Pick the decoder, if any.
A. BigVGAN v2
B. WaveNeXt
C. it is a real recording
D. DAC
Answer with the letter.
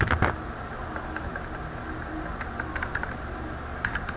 C